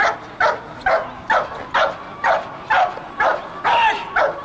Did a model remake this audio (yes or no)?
no